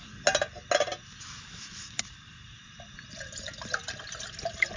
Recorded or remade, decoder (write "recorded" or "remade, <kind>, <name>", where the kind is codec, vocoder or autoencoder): recorded